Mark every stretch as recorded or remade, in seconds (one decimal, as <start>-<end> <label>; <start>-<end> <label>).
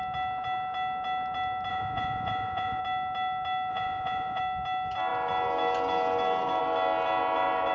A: 0.0-1.7 recorded; 1.7-2.8 remade; 2.8-3.7 recorded; 3.7-4.4 remade; 4.4-7.7 recorded